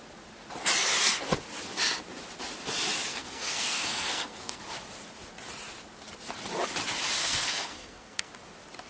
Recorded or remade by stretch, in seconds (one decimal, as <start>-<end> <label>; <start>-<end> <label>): 0.0-3.1 recorded; 3.1-4.6 remade; 4.6-7.2 recorded; 7.2-8.3 remade; 8.3-8.9 recorded